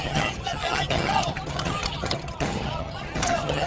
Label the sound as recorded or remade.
remade